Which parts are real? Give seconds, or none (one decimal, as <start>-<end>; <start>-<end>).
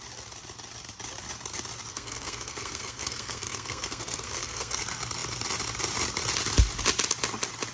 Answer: 0.0-1.9; 4.8-7.7